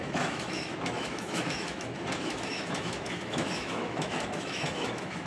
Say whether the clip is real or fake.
fake